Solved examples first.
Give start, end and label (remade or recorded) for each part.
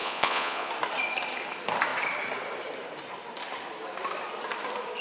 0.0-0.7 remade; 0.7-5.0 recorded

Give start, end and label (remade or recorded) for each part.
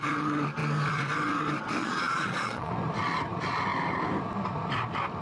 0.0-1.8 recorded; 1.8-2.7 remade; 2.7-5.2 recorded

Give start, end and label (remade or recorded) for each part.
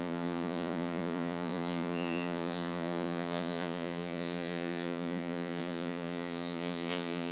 0.0-7.3 remade